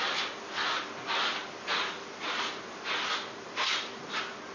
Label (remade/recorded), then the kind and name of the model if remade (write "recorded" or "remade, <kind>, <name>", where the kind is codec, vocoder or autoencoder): recorded